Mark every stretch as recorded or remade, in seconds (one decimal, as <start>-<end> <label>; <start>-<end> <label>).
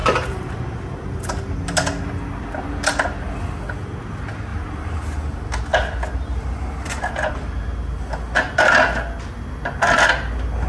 0.0-0.8 remade; 0.8-4.5 recorded; 4.5-5.0 remade; 5.0-10.7 recorded